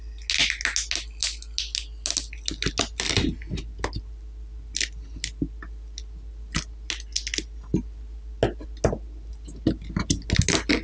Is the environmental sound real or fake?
real